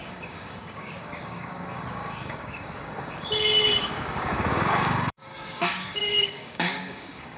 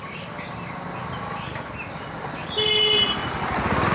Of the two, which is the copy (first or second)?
first